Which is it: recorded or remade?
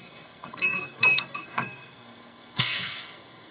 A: remade